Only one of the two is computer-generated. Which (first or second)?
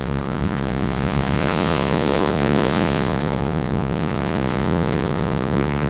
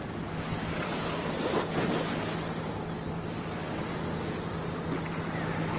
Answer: first